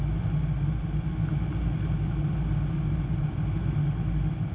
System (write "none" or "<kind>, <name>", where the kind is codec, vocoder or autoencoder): none